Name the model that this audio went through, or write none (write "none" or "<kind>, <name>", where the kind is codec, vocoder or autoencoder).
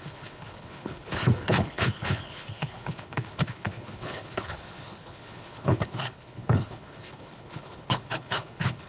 codec, HILCodec